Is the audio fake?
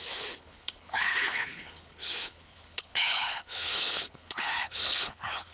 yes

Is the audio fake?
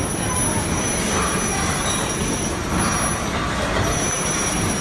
no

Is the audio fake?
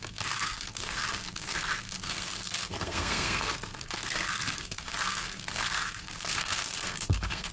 yes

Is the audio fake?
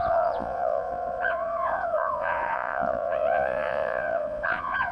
yes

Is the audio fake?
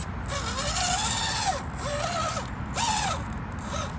no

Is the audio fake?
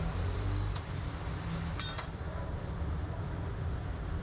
yes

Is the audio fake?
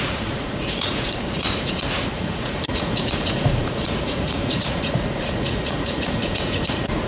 yes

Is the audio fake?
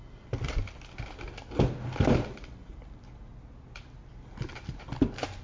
no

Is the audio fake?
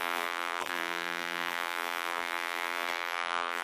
yes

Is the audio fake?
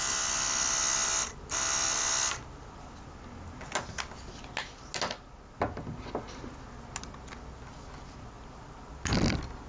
no